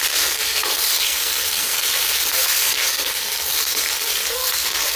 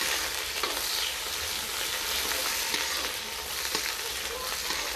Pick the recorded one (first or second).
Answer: second